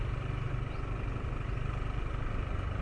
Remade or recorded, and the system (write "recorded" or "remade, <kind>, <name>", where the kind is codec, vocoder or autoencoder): recorded